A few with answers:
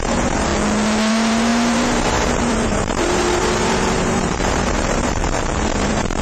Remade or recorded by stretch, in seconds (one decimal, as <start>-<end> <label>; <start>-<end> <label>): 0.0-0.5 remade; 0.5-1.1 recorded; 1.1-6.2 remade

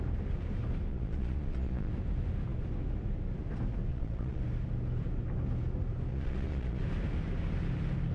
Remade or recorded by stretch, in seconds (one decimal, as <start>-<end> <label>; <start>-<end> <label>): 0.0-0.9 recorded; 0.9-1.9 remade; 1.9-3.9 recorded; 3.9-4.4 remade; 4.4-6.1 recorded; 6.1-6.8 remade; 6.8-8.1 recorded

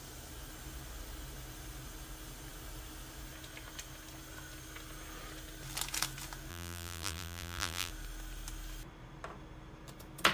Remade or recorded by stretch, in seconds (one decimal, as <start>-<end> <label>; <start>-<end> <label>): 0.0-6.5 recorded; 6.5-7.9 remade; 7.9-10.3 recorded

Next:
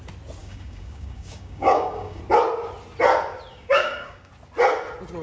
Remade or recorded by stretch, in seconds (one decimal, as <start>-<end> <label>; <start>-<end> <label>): 0.0-0.4 recorded; 0.4-2.2 remade; 2.2-3.5 recorded; 3.5-4.3 remade; 4.3-5.2 recorded

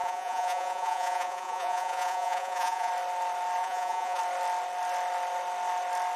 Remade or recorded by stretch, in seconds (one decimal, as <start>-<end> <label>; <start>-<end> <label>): 0.0-2.9 remade; 2.9-3.6 recorded; 3.6-4.2 remade; 4.2-6.2 recorded

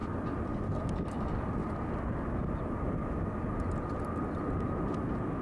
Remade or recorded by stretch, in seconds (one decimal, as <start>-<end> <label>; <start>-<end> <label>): 0.0-0.8 remade; 0.8-1.6 recorded; 1.6-2.5 remade; 2.5-5.4 recorded

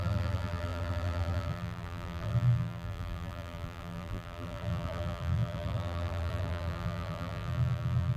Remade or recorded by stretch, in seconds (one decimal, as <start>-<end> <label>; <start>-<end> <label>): 0.0-8.2 remade